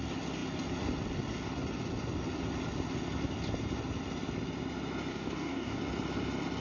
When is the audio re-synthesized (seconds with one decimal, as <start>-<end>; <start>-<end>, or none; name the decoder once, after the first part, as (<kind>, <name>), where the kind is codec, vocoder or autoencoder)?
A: 5.1-5.8 (codec, DAC)